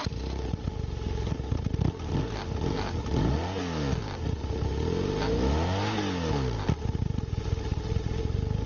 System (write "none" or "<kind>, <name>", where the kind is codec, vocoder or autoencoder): none